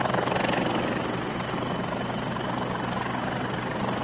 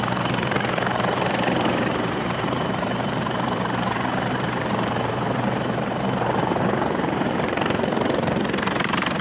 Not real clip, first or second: second